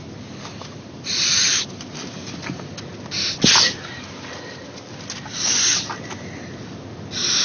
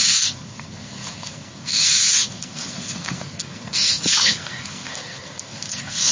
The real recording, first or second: first